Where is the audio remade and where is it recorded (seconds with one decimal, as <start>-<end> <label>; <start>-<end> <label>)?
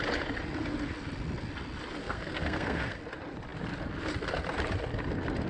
0.0-2.0 recorded; 2.0-3.0 remade; 3.0-5.5 recorded